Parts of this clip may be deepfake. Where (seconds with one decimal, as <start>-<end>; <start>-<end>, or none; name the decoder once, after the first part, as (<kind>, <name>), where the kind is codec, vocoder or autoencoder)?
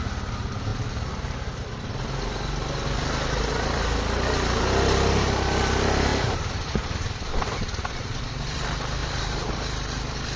6.1-8.2 (vocoder, BigVGAN v2); 9.0-9.5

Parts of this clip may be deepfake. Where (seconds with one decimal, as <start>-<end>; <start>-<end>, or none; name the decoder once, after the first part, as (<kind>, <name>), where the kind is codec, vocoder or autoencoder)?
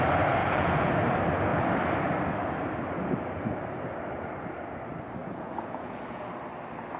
0.4-0.9 (vocoder, Vocos); 5.2-6.3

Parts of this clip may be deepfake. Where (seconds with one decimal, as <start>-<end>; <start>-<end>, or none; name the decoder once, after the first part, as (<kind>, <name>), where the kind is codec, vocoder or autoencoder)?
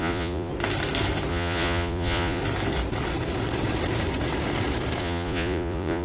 0.0-0.5 (vocoder, Vocos); 1.3-2.4; 5.0-6.0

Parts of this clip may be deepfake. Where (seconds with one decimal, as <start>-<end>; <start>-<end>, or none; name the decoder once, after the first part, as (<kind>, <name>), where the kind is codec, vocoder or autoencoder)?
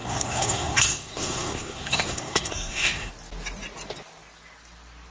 0.0-3.1 (codec, SNAC)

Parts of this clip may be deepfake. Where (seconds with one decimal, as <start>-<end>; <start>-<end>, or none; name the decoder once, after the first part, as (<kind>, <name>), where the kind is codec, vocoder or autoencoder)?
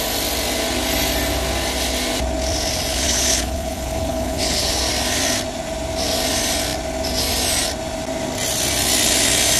2.9-4.8 (codec, HILCodec)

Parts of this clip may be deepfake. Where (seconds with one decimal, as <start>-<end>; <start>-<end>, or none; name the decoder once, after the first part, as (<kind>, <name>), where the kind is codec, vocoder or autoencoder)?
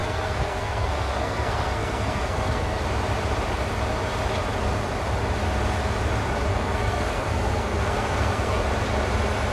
0.0-2.8 (codec, SNAC); 6.5-8.6